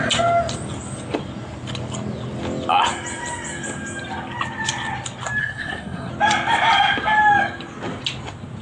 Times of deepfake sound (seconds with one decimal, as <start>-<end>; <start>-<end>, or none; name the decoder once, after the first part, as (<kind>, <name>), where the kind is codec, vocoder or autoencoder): 5.4-6.1 (codec, SNAC)